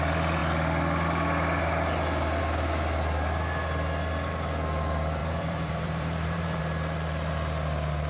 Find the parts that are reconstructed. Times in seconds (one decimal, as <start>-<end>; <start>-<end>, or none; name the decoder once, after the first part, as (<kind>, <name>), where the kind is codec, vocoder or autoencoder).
5.2-6.6 (vocoder, BigVGAN v2)